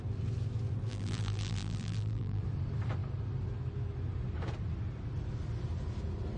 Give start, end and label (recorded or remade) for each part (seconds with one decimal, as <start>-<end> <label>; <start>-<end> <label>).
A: 0.0-0.9 recorded; 0.9-2.4 remade; 2.4-6.4 recorded